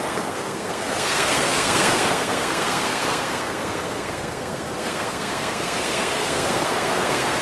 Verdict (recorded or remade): remade